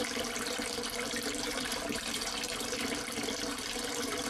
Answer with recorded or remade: remade